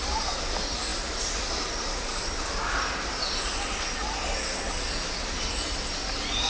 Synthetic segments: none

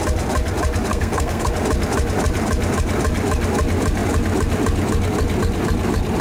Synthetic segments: 0.9-1.5 (codec, SNAC)

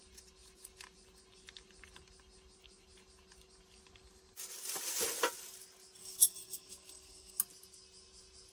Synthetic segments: 6.0-7.4 (codec, SNAC)

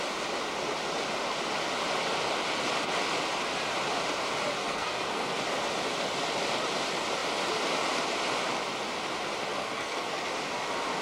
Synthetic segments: 4.6-5.4 (codec, SNAC); 9.5-10.3

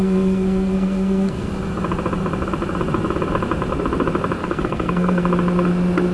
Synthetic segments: 0.0-1.5 (codec, SNAC); 4.4-5.3

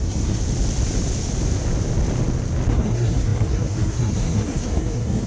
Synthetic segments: 0.0-0.4 (codec, SNAC); 2.7-5.3

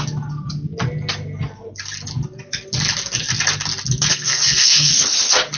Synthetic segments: 4.1-4.9 (codec, SNAC)